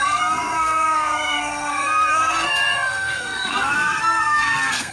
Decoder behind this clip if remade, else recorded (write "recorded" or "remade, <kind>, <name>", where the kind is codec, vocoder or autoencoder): remade, codec, SNAC